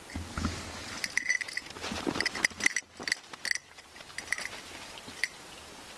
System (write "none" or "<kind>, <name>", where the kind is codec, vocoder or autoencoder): none